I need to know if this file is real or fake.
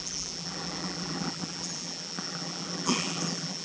fake